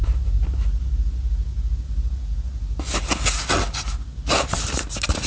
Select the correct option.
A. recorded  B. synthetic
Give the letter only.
A